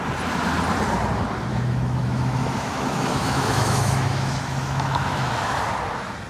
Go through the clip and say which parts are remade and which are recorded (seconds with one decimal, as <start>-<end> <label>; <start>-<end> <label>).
0.0-1.5 recorded; 1.5-5.3 remade; 5.3-6.3 recorded